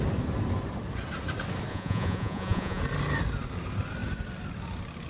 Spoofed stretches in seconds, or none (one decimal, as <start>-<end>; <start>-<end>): 1.7-2.8